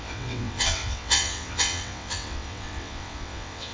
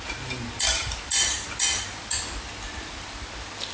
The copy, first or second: first